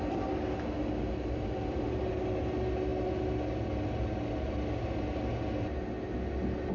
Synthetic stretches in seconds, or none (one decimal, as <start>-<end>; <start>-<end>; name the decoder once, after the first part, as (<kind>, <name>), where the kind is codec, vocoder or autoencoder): none